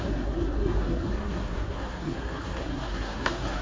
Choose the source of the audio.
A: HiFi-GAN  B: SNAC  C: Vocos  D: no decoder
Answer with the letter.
B